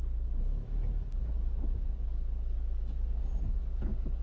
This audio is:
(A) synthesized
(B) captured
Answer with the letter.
B